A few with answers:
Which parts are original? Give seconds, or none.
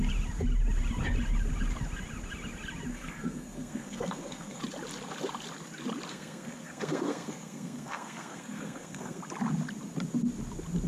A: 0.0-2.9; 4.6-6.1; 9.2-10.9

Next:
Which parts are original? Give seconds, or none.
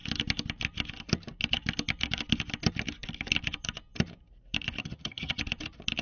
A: 0.0-4.8; 5.4-6.0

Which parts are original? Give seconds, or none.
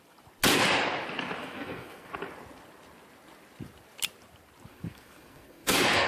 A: 0.0-1.4; 2.1-4.7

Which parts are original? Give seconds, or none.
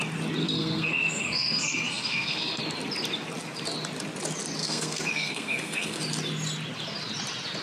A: 0.0-0.4; 2.6-4.6; 6.0-7.6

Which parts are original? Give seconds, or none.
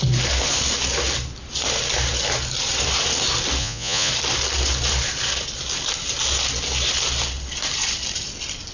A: 0.0-3.6; 4.1-8.7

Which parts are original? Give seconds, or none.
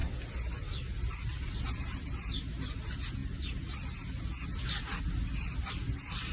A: 0.0-6.3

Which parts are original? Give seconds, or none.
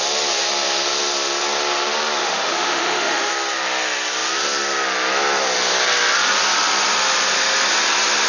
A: 0.0-2.2; 3.3-8.3